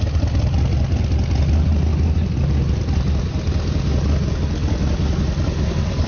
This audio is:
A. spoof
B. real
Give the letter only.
B